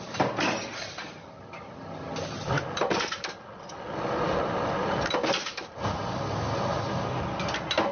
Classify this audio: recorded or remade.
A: recorded